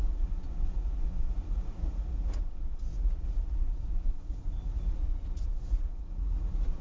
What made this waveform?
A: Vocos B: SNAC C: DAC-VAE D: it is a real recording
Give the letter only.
A